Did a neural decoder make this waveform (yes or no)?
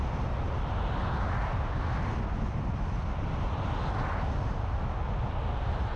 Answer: no